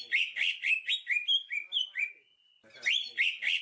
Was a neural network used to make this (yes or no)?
no